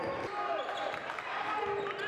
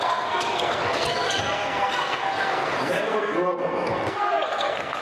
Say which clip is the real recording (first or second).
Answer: first